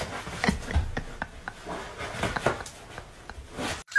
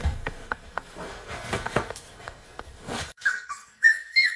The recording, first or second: first